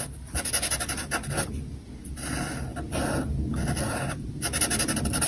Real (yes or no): yes